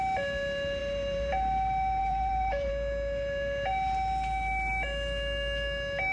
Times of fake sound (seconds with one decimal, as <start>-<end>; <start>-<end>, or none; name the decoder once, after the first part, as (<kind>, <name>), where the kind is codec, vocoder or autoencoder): 0.8-1.3 (vocoder, BigVGAN v2); 2.0-2.7